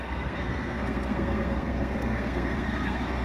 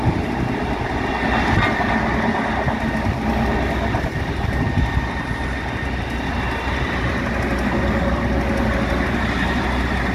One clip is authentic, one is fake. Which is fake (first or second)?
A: first